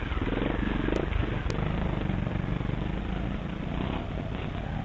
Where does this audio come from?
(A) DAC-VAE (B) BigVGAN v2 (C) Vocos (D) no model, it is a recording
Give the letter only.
D